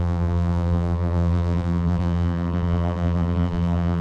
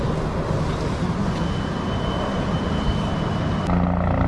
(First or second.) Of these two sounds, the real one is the second